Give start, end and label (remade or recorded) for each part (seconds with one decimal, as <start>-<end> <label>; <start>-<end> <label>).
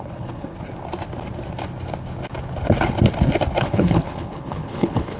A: 0.0-0.5 remade; 0.5-3.6 recorded; 3.6-5.2 remade